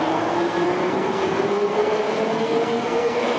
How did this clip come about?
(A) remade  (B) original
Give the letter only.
A